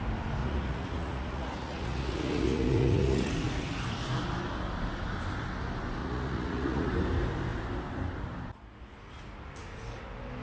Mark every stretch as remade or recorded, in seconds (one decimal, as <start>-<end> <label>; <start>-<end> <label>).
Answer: 0.0-0.4 recorded; 0.4-3.3 remade; 3.3-6.0 recorded; 6.0-6.9 remade; 6.9-10.4 recorded